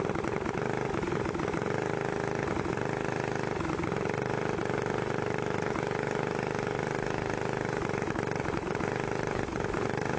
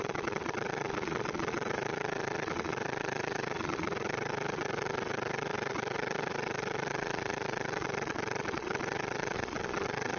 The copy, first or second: second